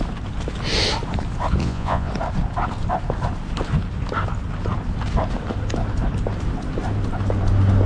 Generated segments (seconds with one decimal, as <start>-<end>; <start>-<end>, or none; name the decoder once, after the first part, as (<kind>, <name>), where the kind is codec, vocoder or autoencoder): 1.6-2.1 (vocoder, Vocos)